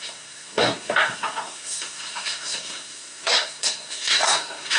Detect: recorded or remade remade